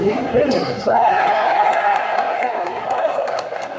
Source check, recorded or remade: remade